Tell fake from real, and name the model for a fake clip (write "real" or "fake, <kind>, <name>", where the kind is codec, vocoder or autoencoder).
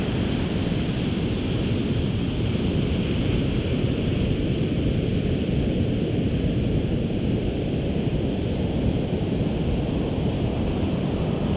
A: fake, vocoder, BigVGAN v2